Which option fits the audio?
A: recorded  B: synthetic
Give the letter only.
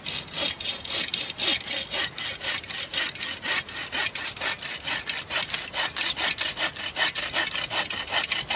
A